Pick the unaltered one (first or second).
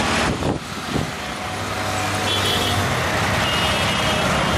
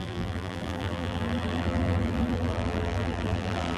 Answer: first